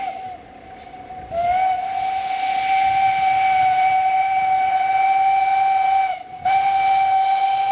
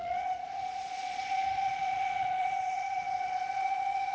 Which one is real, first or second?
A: first